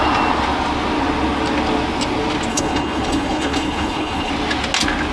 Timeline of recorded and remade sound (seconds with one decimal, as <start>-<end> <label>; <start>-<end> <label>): 0.0-2.5 recorded; 2.5-4.3 remade; 4.3-5.1 recorded